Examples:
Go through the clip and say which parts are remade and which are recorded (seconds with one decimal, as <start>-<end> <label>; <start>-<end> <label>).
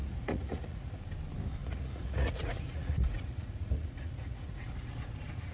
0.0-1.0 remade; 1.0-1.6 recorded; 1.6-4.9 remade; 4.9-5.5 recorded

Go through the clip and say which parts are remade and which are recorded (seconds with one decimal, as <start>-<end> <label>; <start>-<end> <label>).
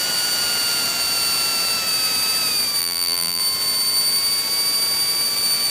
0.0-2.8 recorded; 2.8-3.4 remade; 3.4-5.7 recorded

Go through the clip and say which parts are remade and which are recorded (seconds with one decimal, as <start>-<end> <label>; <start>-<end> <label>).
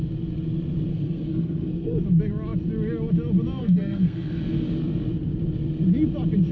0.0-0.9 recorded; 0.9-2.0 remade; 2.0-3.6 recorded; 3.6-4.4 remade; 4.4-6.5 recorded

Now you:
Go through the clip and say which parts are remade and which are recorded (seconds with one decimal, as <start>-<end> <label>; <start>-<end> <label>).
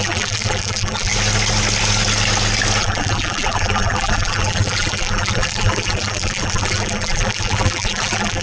0.0-1.1 remade; 1.1-2.8 recorded; 2.8-8.4 remade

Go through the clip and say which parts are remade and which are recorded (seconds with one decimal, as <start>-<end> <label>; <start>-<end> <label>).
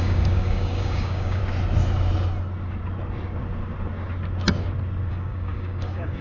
0.0-1.4 remade; 1.4-5.1 recorded; 5.1-6.2 remade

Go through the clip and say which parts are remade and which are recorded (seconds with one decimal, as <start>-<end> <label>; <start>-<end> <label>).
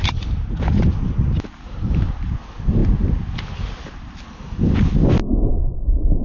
0.0-6.2 recorded